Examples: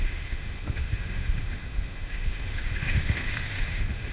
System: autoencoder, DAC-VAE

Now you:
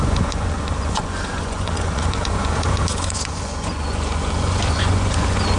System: vocoder, Vocos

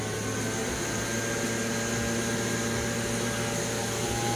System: none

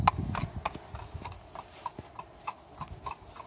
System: none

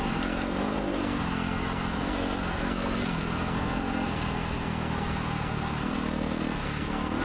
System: codec, SNAC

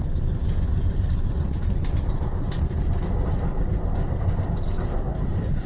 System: none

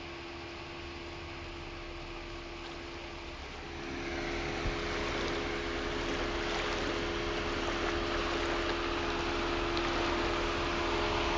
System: none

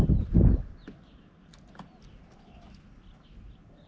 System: none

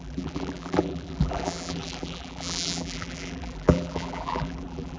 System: vocoder, BigVGAN v2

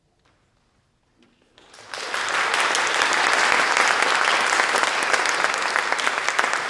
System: none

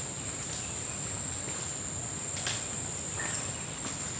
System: none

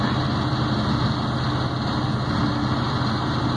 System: none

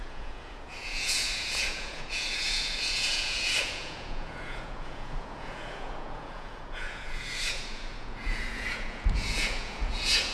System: vocoder, Vocos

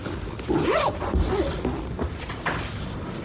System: vocoder, BigVGAN v2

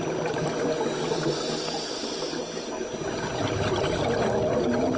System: none